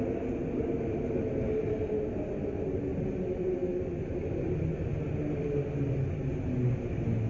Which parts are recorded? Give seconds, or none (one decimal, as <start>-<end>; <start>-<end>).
0.0-7.3